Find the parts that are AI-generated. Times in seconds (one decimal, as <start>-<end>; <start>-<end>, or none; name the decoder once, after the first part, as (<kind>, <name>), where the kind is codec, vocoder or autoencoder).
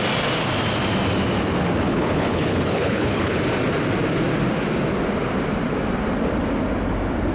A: 1.9-3.4 (codec, HILCodec)